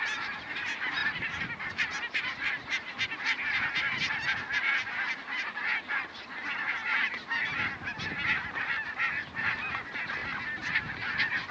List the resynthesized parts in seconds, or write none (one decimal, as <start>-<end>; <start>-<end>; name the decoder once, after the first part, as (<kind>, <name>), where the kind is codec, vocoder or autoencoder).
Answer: none